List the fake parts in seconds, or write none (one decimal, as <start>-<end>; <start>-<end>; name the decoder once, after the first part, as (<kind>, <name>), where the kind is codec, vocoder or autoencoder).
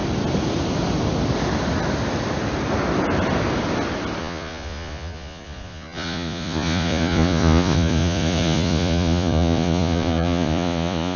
4.2-11.2 (vocoder, Vocos)